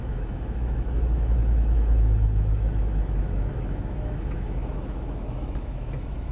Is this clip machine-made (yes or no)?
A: yes